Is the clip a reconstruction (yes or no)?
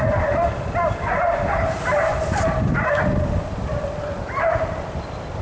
no